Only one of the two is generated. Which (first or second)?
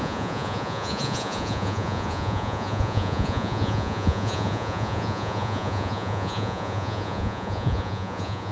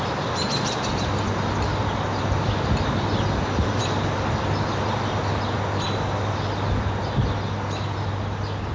first